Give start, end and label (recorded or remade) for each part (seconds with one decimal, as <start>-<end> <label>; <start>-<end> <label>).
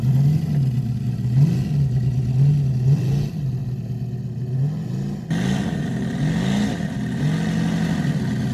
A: 0.0-8.5 recorded